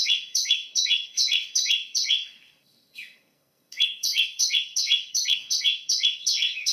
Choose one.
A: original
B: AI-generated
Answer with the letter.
B